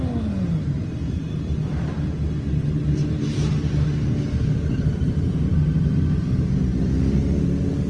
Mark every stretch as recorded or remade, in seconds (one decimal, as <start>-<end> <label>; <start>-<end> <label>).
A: 0.0-0.8 recorded; 0.8-5.5 remade; 5.5-7.9 recorded